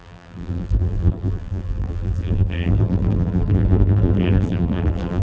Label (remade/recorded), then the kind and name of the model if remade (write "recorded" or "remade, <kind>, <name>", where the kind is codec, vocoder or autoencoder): remade, vocoder, BigVGAN v2